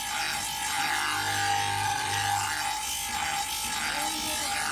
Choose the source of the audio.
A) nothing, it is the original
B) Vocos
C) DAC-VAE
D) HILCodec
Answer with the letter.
A